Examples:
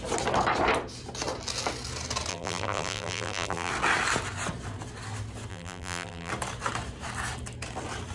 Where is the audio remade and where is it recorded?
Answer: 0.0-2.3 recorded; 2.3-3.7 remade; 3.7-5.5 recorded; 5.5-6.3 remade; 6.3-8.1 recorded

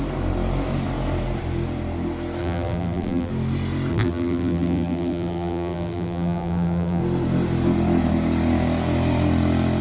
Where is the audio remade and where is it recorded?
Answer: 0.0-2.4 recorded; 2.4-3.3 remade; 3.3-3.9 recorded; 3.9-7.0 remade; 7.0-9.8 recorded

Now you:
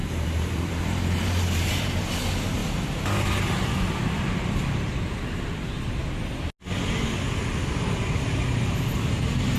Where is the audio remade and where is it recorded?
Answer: 0.0-2.6 remade; 2.6-7.7 recorded; 7.7-9.6 remade

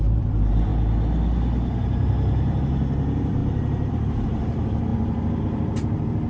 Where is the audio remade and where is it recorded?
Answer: 0.0-0.7 remade; 0.7-1.7 recorded; 1.7-6.3 remade

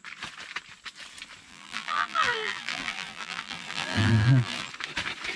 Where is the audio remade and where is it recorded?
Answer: 0.0-1.5 recorded; 1.5-4.7 remade; 4.7-5.4 recorded